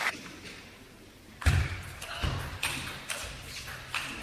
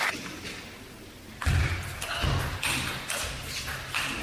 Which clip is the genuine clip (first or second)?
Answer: second